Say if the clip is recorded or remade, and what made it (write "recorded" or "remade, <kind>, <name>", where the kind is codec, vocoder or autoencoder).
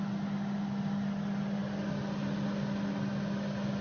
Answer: recorded